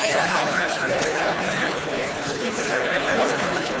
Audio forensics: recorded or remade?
remade